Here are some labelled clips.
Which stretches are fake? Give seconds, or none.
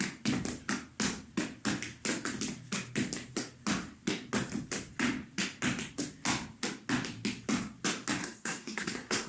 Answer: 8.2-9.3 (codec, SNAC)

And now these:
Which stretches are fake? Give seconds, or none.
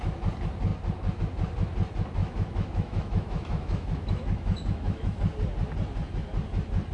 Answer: 2.2-5.2 (autoencoder, DAC-VAE)